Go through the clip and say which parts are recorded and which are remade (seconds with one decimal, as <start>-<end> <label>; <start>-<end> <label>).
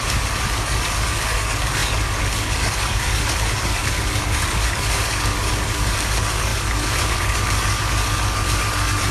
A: 0.0-9.1 remade